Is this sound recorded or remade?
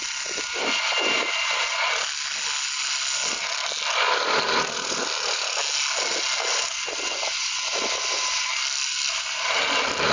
recorded